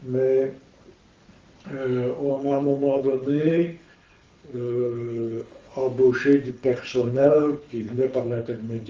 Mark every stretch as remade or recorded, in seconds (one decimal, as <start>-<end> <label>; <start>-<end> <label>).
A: 0.0-2.3 recorded; 2.3-5.7 remade; 5.7-6.5 recorded; 6.5-8.9 remade